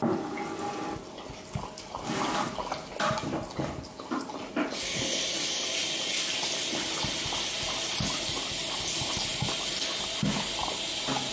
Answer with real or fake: real